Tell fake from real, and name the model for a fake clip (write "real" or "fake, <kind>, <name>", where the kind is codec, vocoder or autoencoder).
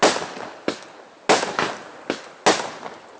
real